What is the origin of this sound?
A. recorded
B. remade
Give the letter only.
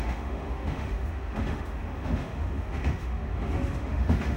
B